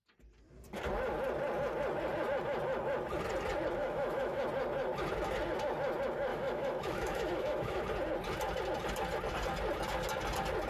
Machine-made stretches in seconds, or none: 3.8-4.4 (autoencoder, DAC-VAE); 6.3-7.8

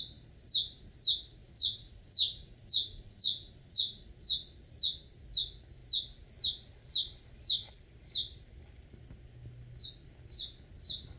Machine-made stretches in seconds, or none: 1.4-4.1 (vocoder, Vocos)

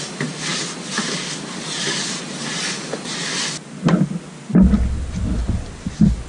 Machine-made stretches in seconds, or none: none

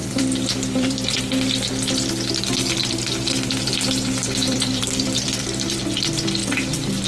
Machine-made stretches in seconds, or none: 0.0-1.2 (vocoder, BigVGAN v2); 2.8-3.7; 4.2-5.8; 6.4-7.1

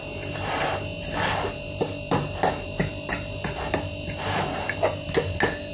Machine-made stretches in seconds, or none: none

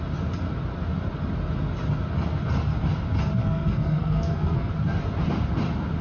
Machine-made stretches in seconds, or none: 3.4-4.7 (codec, SNAC)

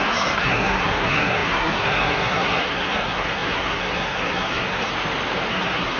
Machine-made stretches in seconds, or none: 0.0-4.9 (codec, SNAC); 5.5-6.0

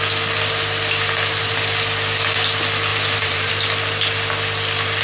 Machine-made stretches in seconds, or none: 2.9-3.5 (vocoder, BigVGAN v2)